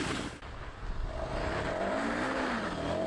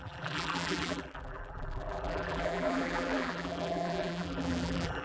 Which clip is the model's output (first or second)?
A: second